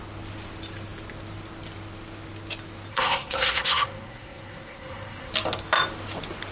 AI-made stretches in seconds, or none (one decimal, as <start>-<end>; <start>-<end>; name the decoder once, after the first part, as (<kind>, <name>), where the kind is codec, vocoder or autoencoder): 2.9-5.3 (codec, SNAC)